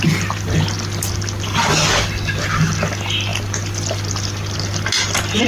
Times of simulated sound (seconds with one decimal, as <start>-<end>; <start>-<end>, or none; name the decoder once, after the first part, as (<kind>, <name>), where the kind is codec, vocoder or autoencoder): none